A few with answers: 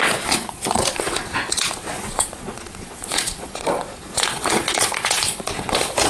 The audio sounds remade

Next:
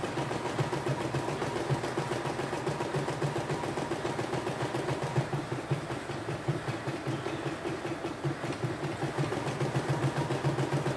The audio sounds recorded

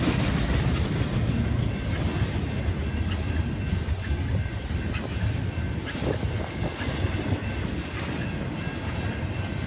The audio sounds recorded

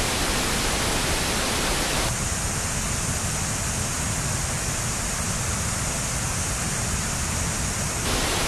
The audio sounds recorded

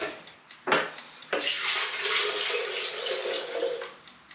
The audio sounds recorded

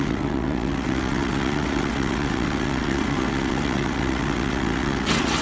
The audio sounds remade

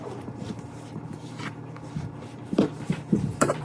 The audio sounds remade